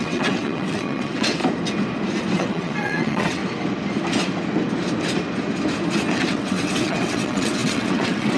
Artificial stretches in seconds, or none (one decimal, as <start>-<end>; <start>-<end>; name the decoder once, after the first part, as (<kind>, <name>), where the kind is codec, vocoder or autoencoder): 0.0-1.4 (vocoder, WaveNeXt); 2.4-3.4; 6.1-8.4